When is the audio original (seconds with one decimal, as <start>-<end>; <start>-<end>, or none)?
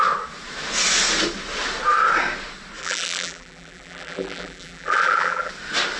0.0-2.8; 5.5-6.0